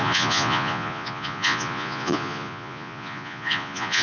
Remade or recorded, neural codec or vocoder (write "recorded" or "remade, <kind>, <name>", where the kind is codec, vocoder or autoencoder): remade, vocoder, Vocos